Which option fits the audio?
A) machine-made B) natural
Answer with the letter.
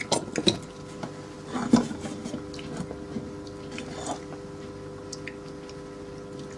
B